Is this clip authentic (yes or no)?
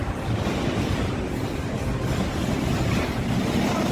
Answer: yes